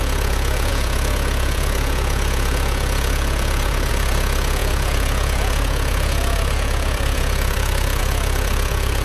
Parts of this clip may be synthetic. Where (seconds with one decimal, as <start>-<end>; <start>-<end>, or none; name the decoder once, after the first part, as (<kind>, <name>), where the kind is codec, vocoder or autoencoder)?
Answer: 0.0-9.0 (vocoder, Vocos)